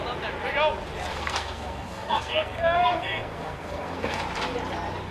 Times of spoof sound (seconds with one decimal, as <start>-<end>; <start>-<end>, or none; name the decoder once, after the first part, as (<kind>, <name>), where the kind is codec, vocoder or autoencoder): 1.1-4.2 (codec, SNAC)